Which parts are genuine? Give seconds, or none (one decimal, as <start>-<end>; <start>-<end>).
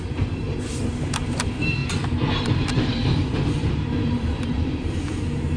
1.8-2.3